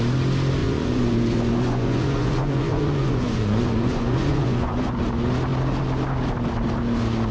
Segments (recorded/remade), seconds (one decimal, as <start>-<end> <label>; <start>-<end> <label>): 0.0-0.6 recorded; 0.6-5.0 remade; 5.0-7.3 recorded